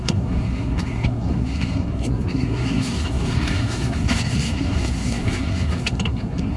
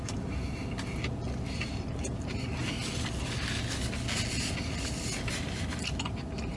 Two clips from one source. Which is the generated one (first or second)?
first